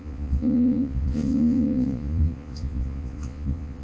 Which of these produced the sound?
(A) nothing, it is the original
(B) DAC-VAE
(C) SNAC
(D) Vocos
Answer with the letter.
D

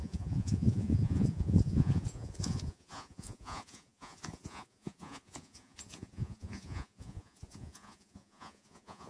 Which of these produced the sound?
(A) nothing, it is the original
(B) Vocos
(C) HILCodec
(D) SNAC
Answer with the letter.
B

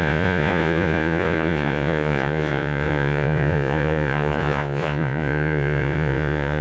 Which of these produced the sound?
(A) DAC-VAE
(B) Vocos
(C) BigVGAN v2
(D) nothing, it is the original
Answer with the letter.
B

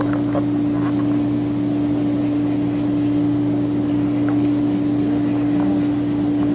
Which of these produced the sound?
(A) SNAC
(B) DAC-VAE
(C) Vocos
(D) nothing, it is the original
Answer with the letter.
D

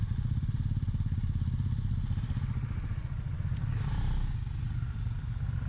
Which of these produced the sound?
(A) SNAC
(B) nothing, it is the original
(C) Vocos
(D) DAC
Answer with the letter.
B